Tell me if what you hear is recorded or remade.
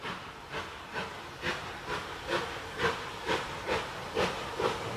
recorded